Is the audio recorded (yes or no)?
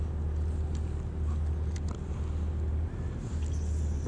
yes